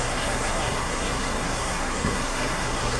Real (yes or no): no